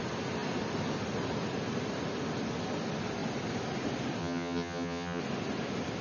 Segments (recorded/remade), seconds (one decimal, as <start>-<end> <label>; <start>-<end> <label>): 0.0-4.2 recorded; 4.2-5.2 remade; 5.2-6.0 recorded